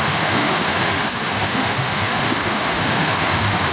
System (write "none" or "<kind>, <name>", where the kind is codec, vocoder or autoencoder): autoencoder, DAC-VAE